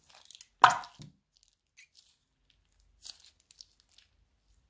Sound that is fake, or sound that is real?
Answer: real